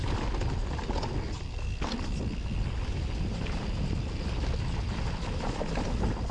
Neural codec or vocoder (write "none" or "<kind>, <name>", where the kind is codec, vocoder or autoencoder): none